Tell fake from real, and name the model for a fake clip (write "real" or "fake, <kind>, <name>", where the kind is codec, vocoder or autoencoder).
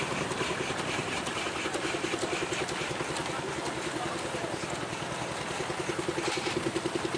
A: real